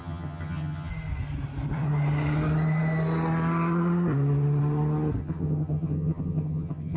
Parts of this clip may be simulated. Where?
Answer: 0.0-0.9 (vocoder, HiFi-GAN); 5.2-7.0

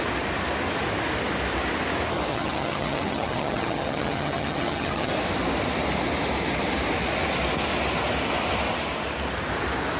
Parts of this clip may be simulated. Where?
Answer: 2.3-5.1 (vocoder, HiFi-GAN)

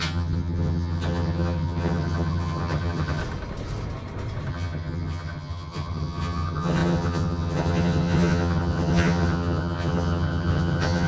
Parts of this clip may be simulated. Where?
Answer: 0.0-3.2 (vocoder, HiFi-GAN); 4.5-11.1

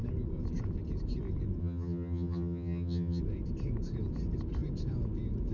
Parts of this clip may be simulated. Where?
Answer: 1.6-3.2 (vocoder, HiFi-GAN)